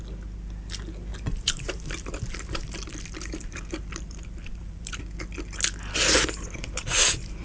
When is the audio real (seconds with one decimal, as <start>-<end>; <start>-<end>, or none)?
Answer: 0.0-1.1; 5.0-6.6